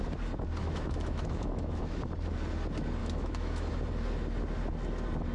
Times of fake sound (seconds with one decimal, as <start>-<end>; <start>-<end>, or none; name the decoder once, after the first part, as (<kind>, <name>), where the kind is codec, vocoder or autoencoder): 0.6-2.0 (autoencoder, DAC-VAE); 3.0-3.7